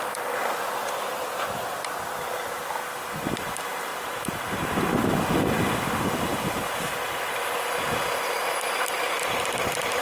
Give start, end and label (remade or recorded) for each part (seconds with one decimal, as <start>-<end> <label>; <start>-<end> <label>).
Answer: 0.0-10.0 recorded

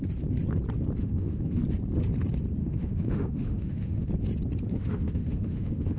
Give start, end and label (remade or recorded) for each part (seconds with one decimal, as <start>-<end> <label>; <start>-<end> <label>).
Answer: 0.0-1.0 recorded; 1.0-1.6 remade; 1.6-2.6 recorded; 2.6-4.1 remade; 4.1-4.7 recorded; 4.7-6.0 remade

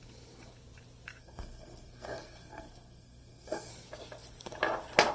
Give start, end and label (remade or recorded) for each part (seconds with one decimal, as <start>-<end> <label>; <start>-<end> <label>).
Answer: 0.0-1.2 recorded; 1.2-3.7 remade; 3.7-5.1 recorded

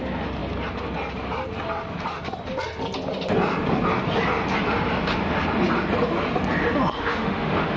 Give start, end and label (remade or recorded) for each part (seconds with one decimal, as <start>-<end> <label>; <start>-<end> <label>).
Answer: 0.0-7.0 recorded; 7.0-7.8 remade

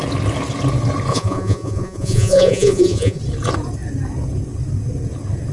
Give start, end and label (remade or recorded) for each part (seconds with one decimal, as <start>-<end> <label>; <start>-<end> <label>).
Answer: 0.0-1.1 recorded; 1.1-3.2 remade; 3.2-5.5 recorded

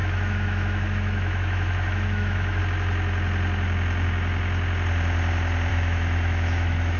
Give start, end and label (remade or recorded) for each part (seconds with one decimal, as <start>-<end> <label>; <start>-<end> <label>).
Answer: 0.0-2.6 remade; 2.6-5.7 recorded; 5.7-7.0 remade

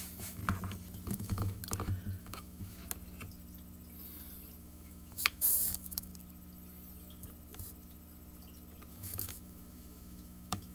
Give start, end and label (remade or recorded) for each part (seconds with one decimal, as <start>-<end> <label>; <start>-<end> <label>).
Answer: 0.0-0.4 remade; 0.4-1.1 recorded; 1.1-1.6 remade; 1.6-2.2 recorded; 2.2-2.8 remade; 2.8-4.6 recorded; 4.6-6.1 remade; 6.1-8.9 recorded; 8.9-10.7 remade

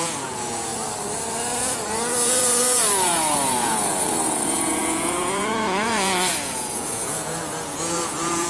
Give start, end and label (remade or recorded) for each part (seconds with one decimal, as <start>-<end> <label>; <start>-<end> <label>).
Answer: 0.0-0.7 remade; 0.7-1.6 recorded; 1.6-8.5 remade